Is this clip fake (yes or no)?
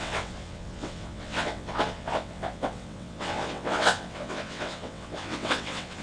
yes